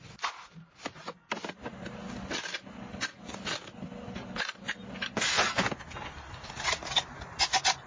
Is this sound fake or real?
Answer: real